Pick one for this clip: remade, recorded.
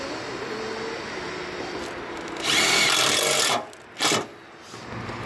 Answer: recorded